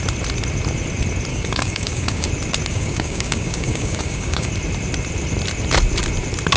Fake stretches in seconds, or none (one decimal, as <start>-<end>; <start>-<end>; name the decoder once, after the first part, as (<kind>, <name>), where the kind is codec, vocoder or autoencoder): 1.3-2.3 (codec, DAC); 2.7-4.5